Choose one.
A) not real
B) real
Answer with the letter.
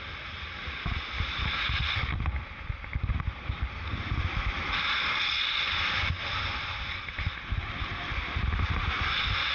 B